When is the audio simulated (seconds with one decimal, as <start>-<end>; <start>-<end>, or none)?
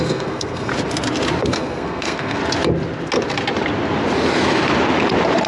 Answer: 0.0-0.7; 1.4-2.4